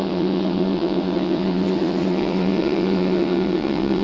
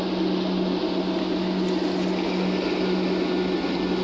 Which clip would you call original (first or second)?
second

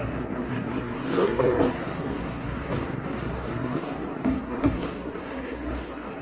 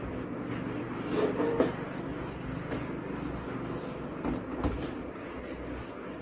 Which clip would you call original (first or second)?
second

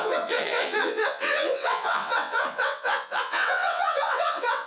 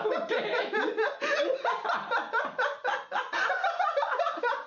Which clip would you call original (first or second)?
second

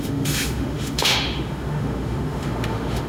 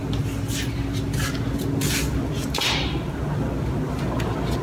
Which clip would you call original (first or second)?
second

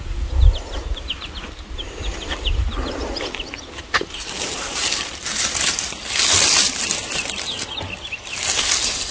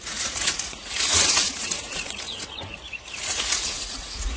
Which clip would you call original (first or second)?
first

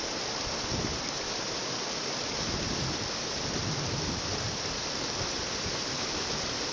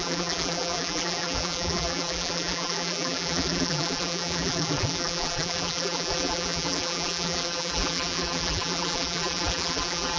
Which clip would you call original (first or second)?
first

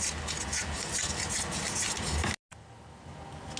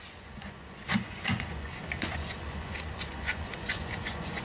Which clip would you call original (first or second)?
first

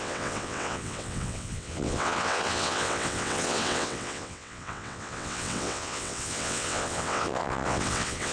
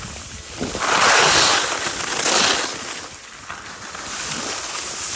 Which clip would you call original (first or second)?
second